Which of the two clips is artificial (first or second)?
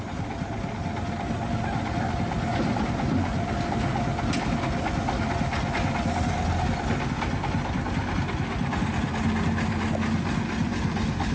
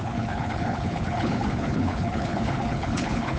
second